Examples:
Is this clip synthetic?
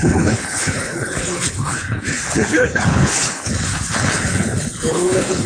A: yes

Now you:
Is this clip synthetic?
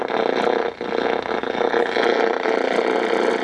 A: no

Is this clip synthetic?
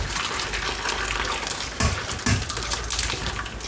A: no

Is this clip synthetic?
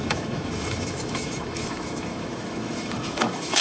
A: yes